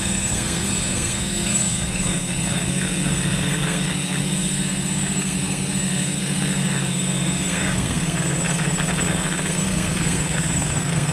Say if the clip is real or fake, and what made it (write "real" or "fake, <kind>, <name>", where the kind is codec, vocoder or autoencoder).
fake, codec, SNAC